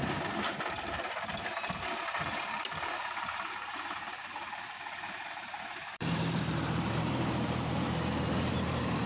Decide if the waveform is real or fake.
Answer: fake